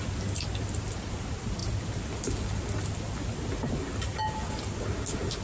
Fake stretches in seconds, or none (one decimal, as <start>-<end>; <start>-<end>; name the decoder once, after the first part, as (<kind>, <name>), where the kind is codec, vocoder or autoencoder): none